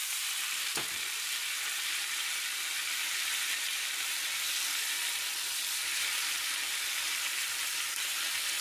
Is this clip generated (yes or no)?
yes